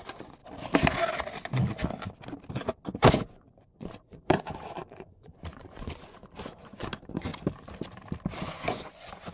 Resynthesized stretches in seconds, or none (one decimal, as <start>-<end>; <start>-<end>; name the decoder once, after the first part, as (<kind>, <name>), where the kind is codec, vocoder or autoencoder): 0.0-0.4 (vocoder, Vocos); 3.1-7.3; 8.4-9.3